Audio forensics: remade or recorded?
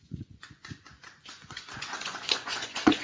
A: remade